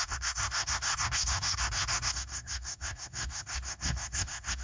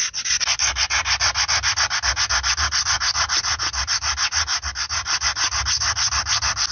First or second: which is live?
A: second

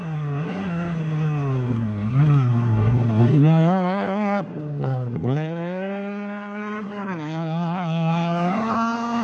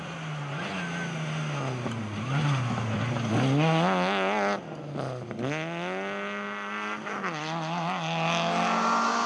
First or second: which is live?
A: second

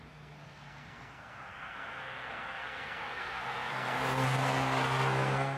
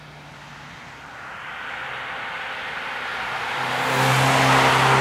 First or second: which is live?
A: second